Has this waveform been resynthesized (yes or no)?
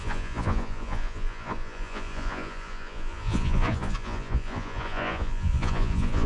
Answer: yes